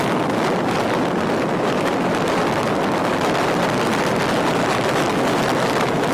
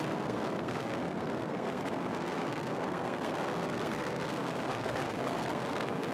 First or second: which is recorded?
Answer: first